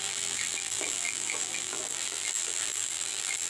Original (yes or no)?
no